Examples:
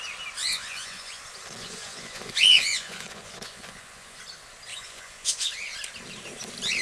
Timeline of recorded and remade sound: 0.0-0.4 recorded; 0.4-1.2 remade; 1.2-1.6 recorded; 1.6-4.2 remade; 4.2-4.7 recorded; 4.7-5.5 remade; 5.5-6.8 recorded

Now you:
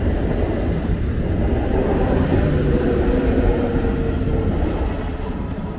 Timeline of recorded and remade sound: 0.0-5.8 recorded

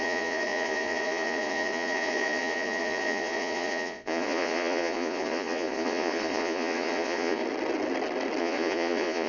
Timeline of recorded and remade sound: 0.0-7.4 remade; 7.4-8.4 recorded; 8.4-9.3 remade

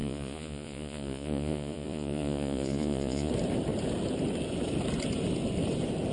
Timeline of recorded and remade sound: 0.0-3.3 remade; 3.3-6.1 recorded